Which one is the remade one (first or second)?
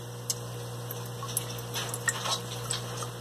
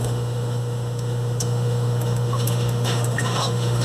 second